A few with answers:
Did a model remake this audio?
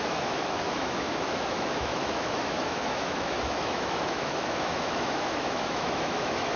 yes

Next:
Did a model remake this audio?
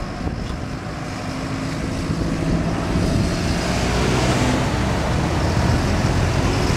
no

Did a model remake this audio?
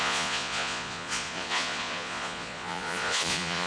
yes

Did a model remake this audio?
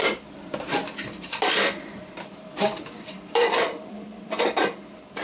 yes